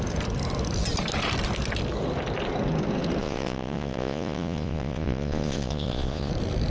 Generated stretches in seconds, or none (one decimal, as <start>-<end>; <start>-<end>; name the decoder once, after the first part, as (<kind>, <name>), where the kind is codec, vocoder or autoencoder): 3.2-6.3 (vocoder, Vocos)